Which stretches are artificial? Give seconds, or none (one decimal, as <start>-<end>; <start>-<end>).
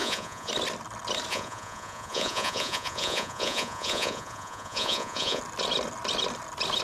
0.0-0.5; 1.3-5.4